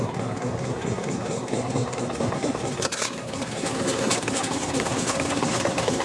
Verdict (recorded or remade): remade